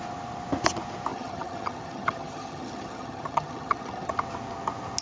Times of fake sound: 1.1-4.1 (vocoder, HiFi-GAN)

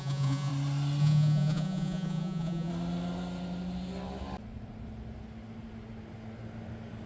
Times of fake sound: 0.0-0.5 (vocoder, Vocos); 1.0-2.7

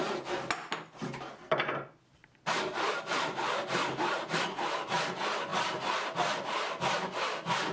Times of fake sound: none

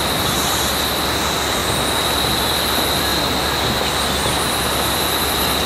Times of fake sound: none

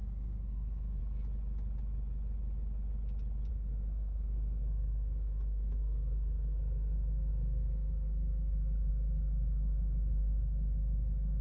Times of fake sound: 0.0-1.0 (codec, SNAC); 3.5-11.4